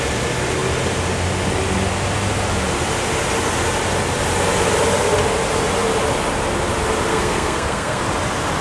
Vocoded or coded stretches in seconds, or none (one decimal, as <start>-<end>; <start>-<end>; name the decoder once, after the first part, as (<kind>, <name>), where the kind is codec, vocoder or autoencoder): 7.1-8.0 (codec, SNAC)